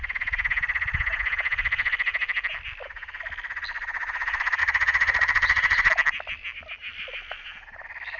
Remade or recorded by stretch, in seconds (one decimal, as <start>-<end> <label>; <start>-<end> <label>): 0.0-4.6 recorded; 4.6-5.9 remade; 5.9-8.2 recorded